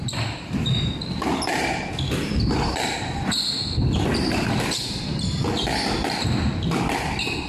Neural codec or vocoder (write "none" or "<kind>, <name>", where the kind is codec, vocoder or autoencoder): none